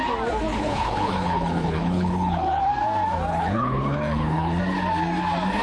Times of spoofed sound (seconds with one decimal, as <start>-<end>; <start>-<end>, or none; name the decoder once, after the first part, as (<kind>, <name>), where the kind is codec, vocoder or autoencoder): 0.5-2.6 (codec, HILCodec); 3.3-4.6